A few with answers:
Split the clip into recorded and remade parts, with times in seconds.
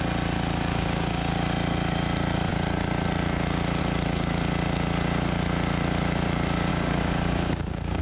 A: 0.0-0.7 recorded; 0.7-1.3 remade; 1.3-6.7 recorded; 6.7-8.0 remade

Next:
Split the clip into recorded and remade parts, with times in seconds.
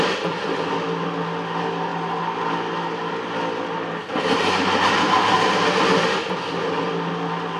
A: 0.0-7.6 recorded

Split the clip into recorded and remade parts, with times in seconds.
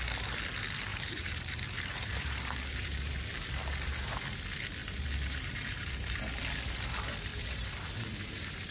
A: 0.0-0.9 recorded; 0.9-3.5 remade; 3.5-4.8 recorded; 4.8-6.2 remade; 6.2-7.3 recorded; 7.3-8.7 remade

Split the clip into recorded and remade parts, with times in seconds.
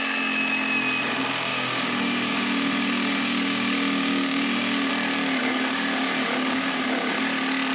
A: 0.0-1.5 recorded; 1.5-4.9 remade; 4.9-5.4 recorded; 5.4-7.2 remade; 7.2-7.7 recorded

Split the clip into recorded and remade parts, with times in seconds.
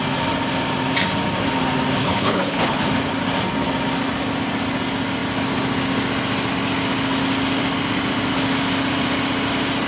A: 0.0-2.0 recorded; 2.0-2.8 remade; 2.8-9.9 recorded